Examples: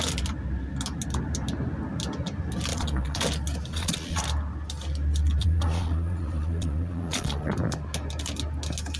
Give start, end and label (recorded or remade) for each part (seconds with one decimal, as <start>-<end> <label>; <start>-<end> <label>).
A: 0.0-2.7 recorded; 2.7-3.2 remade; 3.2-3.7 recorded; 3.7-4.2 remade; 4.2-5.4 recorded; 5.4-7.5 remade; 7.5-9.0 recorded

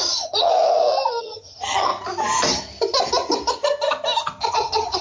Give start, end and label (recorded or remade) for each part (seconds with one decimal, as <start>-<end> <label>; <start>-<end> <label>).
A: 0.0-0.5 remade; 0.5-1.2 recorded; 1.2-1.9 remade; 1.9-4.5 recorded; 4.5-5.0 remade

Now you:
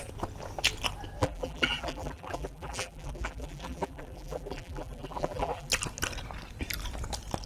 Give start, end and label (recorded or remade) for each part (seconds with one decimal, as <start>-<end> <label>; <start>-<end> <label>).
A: 0.0-1.2 recorded; 1.2-5.7 remade; 5.7-7.5 recorded

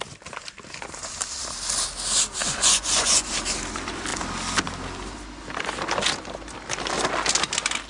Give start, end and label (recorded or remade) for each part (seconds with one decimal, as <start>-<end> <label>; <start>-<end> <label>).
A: 0.0-2.4 recorded; 2.4-3.3 remade; 3.3-7.9 recorded

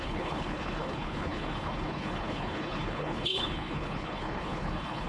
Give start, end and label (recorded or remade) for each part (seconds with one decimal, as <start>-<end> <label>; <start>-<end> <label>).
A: 0.0-5.1 remade

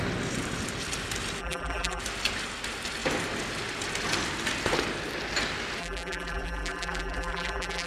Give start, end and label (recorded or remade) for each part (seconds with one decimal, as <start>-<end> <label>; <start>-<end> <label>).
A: 0.0-1.4 recorded; 1.4-2.0 remade; 2.0-5.8 recorded; 5.8-7.9 remade

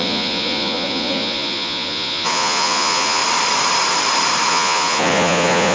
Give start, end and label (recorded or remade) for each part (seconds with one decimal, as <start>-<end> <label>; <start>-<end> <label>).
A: 0.0-3.2 remade; 3.2-4.5 recorded; 4.5-5.7 remade